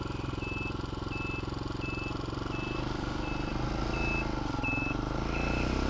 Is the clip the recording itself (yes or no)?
yes